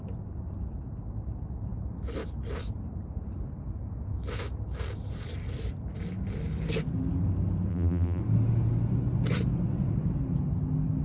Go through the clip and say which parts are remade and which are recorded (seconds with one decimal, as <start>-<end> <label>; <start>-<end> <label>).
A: 0.0-7.7 recorded; 7.7-8.2 remade; 8.2-11.0 recorded